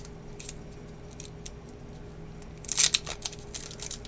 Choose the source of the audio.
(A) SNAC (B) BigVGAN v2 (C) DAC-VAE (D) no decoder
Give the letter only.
D